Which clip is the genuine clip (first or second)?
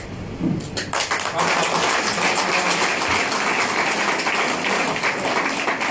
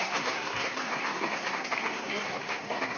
first